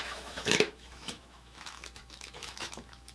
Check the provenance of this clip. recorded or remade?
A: remade